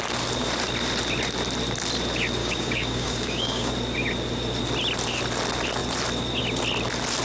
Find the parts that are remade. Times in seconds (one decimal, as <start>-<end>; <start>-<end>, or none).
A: 2.4-3.7